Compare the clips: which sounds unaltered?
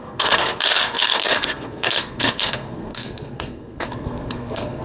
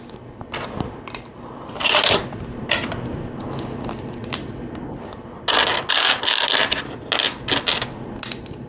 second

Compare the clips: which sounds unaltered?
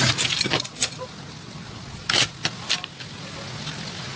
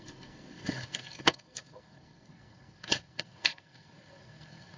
first